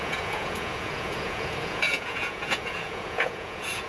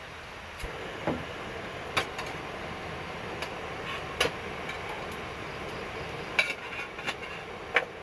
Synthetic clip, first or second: first